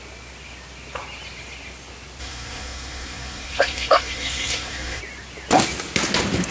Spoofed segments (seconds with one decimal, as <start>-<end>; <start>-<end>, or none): 2.2-5.0

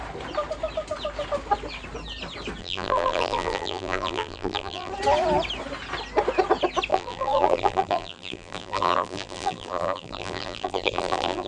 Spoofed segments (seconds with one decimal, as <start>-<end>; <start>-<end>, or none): 2.6-4.9; 6.9-11.5

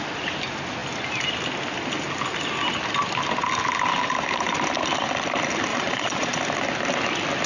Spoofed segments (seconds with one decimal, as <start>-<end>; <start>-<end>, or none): 5.7-6.4

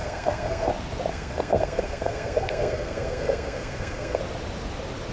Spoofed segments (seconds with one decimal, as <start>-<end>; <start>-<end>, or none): 0.0-0.7; 1.1-4.2

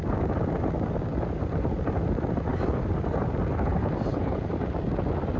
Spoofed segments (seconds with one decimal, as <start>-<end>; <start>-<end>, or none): 1.1-1.7; 2.5-5.0